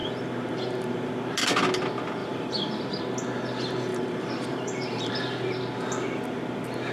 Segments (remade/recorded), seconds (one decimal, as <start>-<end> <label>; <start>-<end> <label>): 0.0-1.1 remade; 1.1-2.2 recorded; 2.2-3.0 remade; 3.0-3.9 recorded; 3.9-5.1 remade; 5.1-6.9 recorded